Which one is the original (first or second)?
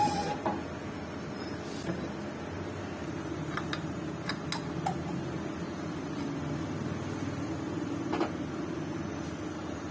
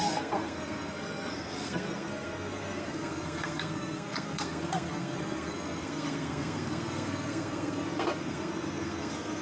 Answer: first